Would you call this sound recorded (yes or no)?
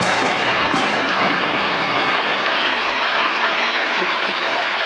no